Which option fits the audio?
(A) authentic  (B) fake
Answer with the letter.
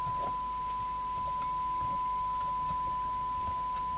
A